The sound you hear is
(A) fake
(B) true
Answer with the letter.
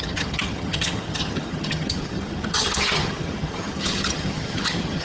A